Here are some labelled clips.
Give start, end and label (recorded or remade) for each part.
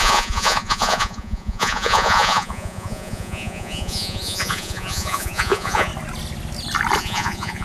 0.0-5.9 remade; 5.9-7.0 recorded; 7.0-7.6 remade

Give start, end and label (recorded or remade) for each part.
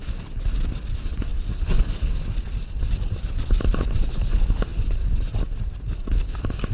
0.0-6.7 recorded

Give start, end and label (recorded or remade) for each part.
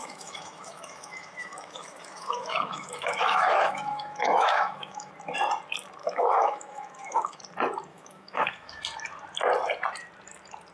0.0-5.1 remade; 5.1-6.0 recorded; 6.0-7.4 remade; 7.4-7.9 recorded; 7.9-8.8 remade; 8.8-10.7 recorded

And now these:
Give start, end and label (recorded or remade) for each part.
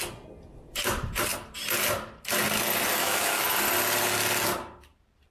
0.0-3.0 recorded; 3.0-3.6 remade; 3.6-5.3 recorded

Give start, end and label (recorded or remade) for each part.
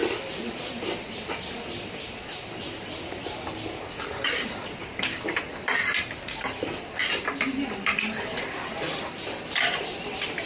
0.0-10.5 recorded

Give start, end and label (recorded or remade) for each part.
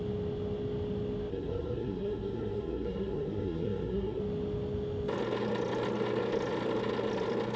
0.0-1.3 recorded; 1.3-4.2 remade; 4.2-7.6 recorded